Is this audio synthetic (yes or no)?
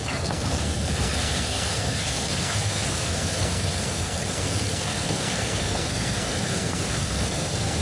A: yes